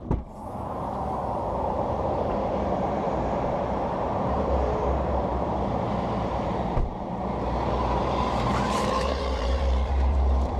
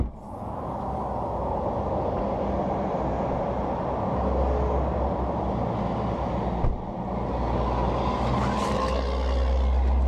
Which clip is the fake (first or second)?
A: first